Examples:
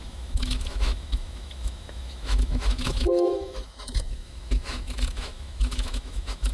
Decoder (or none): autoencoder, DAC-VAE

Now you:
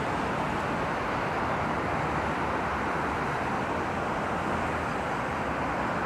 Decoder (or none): none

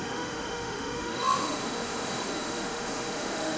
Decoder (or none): autoencoder, DAC-VAE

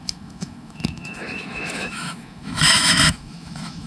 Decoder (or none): autoencoder, DAC-VAE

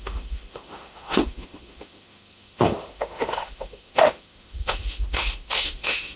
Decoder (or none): autoencoder, DAC-VAE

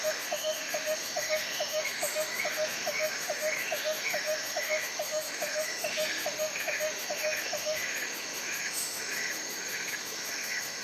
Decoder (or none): autoencoder, DAC-VAE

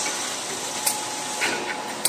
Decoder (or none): none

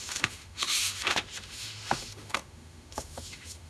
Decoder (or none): autoencoder, DAC-VAE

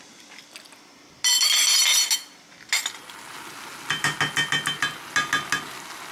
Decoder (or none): none